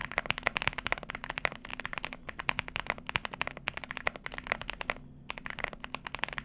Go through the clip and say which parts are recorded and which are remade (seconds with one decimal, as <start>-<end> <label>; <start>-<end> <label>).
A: 0.0-6.4 recorded